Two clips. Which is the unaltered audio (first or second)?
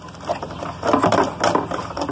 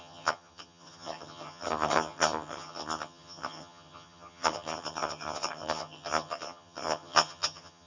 first